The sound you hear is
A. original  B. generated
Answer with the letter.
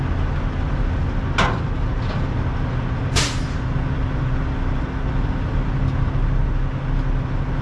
A